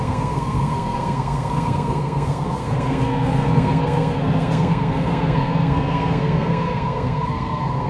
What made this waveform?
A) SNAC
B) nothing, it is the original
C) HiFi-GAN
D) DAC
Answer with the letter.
A